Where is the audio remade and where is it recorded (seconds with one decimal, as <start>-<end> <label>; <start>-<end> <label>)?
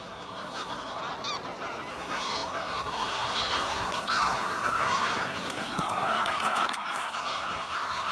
0.0-1.0 remade; 1.0-1.9 recorded; 1.9-8.1 remade